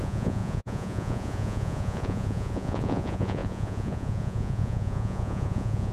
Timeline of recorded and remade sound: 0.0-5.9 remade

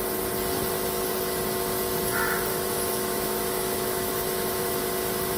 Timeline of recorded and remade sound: 0.0-2.5 recorded; 2.5-4.8 remade; 4.8-5.4 recorded

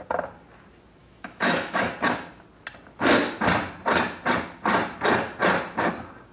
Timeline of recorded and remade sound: 0.0-1.0 recorded; 1.0-1.9 remade; 1.9-6.3 recorded

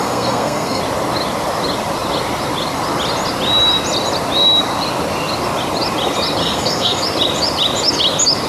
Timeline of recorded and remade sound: 0.0-0.8 remade; 0.8-6.4 recorded; 6.4-7.0 remade; 7.0-8.5 recorded